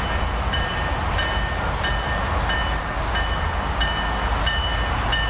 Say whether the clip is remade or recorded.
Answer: recorded